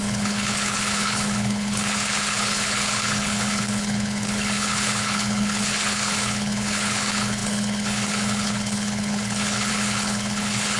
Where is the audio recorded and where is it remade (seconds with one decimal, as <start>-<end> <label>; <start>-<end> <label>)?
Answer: 0.0-10.8 remade